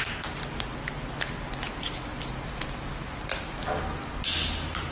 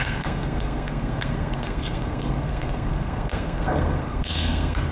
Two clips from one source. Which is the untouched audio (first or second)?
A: first